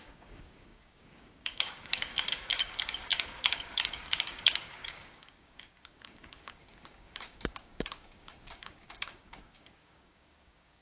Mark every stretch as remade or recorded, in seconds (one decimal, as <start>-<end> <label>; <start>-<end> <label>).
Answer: 0.0-10.8 remade